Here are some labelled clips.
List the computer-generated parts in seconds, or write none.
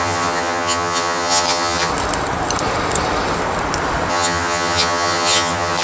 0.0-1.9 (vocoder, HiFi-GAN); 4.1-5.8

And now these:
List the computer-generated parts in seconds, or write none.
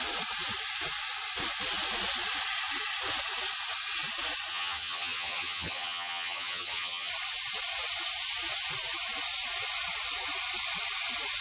4.5-7.1 (vocoder, HiFi-GAN)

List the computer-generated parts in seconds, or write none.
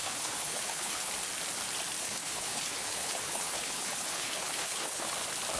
0.0-1.1 (codec, HILCodec); 2.0-5.1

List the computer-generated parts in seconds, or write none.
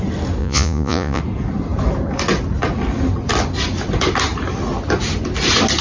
0.4-1.2 (vocoder, Vocos)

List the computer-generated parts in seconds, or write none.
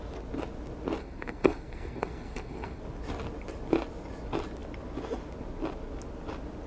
1.0-2.8 (codec, SNAC)